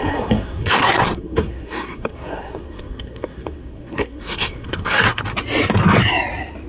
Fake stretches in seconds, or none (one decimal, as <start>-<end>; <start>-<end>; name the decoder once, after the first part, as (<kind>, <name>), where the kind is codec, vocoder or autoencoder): 0.0-5.3 (codec, SNAC)